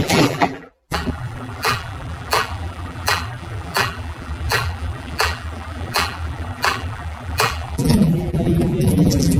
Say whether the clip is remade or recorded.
remade